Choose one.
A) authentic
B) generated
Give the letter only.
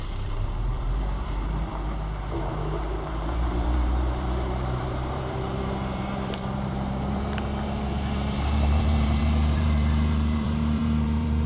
B